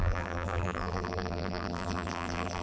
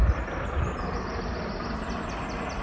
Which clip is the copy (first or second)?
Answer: first